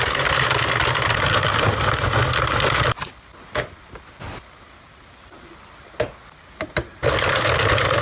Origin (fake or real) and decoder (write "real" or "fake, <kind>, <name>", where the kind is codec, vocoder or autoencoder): real